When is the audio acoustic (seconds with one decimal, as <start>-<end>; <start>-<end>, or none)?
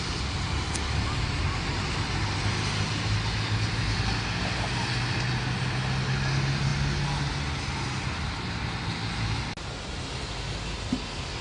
0.0-11.4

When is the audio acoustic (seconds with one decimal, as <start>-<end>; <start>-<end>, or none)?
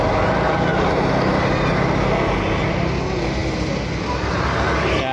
0.0-5.1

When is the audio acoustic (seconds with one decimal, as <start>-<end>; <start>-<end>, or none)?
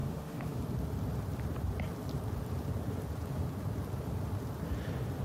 0.6-5.2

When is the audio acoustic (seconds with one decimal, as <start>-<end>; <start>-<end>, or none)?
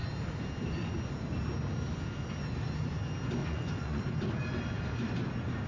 0.0-3.4; 4.0-5.7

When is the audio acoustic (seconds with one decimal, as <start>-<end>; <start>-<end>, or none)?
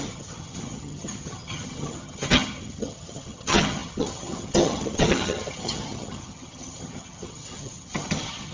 none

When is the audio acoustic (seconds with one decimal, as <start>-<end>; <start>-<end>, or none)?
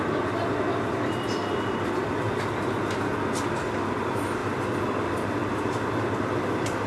0.0-6.9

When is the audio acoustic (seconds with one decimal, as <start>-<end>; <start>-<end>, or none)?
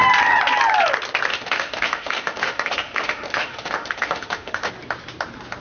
0.0-1.3; 4.7-5.6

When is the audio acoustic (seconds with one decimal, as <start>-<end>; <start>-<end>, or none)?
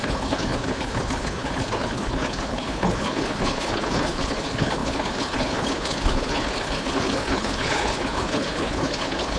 none